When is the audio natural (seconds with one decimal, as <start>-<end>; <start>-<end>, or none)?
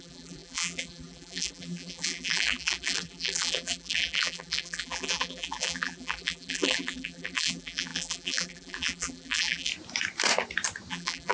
9.7-10.9